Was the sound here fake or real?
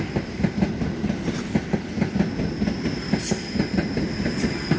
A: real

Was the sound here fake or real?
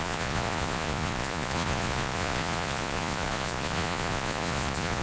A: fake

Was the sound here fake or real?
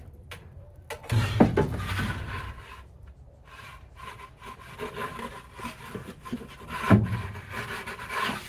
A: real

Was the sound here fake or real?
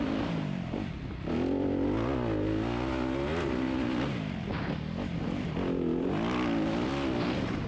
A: real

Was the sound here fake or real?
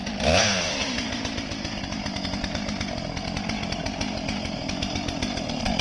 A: real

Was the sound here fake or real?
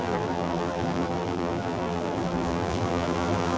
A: fake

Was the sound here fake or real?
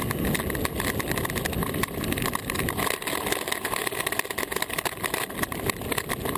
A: real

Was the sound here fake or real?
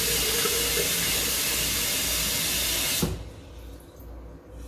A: real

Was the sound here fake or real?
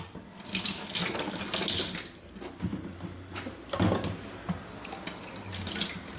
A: real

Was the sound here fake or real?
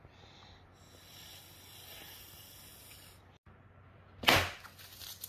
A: real